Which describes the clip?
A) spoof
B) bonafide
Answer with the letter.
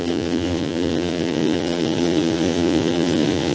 A